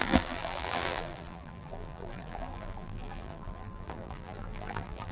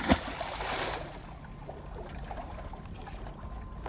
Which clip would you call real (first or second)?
second